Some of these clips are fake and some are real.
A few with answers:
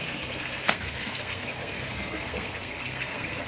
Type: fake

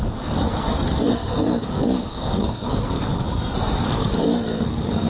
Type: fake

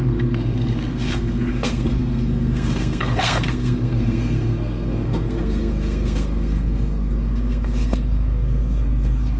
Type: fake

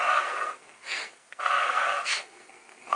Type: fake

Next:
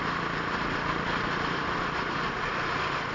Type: real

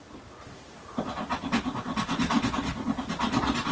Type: real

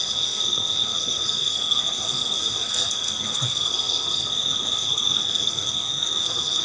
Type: fake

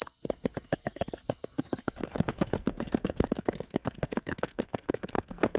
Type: fake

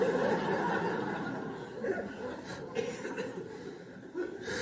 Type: real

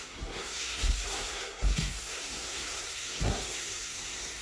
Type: fake